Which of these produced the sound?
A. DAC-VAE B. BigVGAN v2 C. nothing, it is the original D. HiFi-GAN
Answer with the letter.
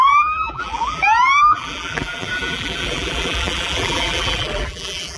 B